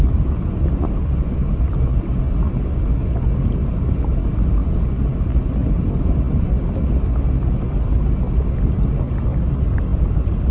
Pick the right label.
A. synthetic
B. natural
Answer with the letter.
B